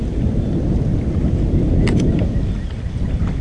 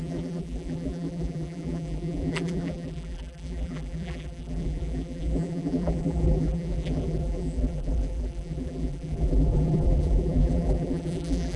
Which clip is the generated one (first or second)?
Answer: second